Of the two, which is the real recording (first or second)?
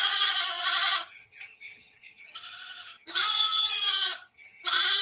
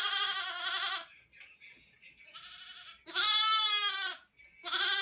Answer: second